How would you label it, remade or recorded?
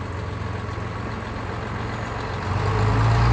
recorded